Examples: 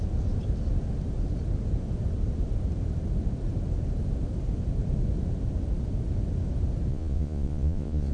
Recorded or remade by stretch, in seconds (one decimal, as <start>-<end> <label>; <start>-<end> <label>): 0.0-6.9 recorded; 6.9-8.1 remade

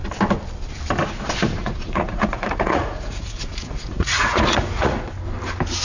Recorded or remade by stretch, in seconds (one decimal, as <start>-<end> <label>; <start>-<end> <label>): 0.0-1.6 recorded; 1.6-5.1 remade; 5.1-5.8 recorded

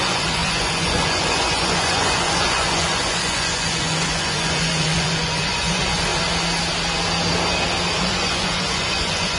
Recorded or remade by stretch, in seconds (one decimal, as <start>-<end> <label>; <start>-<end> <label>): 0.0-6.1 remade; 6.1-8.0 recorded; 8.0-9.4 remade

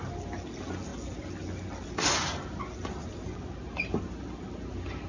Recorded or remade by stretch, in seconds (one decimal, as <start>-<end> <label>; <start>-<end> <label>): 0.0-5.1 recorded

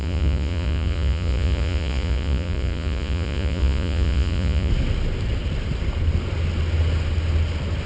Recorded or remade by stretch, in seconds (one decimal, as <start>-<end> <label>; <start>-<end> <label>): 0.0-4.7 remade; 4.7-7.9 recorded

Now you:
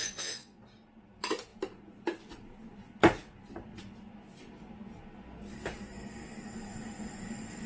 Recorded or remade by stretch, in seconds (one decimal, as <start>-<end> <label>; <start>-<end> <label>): 0.0-0.6 remade; 0.6-7.7 recorded